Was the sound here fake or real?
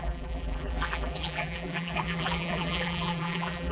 fake